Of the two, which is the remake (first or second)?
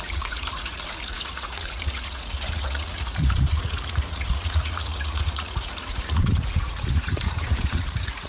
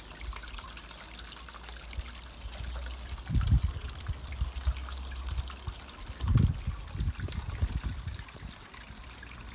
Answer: first